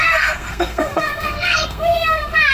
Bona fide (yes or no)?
no